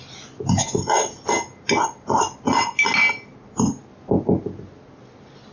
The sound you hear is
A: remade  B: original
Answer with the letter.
B